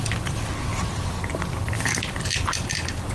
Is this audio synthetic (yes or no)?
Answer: no